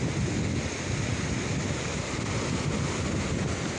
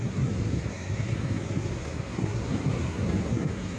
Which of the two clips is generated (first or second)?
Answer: second